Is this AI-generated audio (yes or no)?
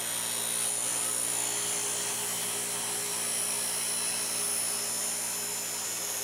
no